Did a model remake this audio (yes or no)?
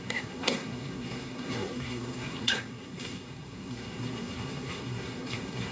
yes